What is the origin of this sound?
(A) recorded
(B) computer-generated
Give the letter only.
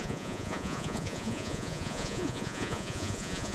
B